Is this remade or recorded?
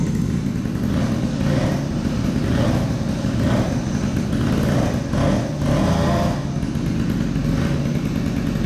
recorded